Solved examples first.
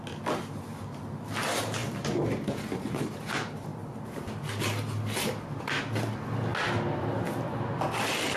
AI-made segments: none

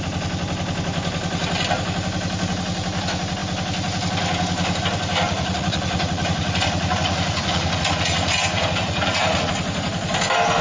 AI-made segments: 5.3-9.5 (vocoder, Vocos)

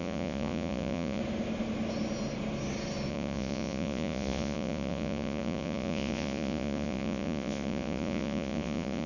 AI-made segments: 0.0-1.2 (vocoder, Vocos); 3.1-9.1

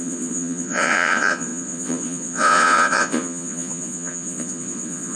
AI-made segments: 0.0-5.1 (vocoder, Vocos)

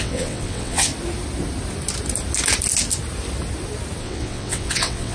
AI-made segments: 0.0-0.9 (vocoder, WaveNeXt); 4.0-5.1

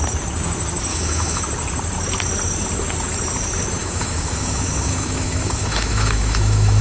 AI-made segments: 0.9-1.4 (autoencoder, DAC-VAE); 3.8-6.8

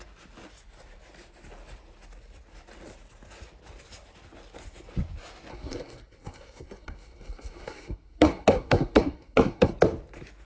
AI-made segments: 5.5-9.7 (codec, SNAC)